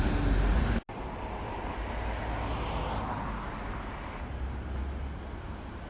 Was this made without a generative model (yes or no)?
yes